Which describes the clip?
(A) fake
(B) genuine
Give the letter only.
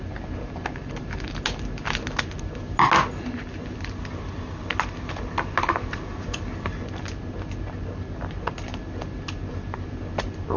B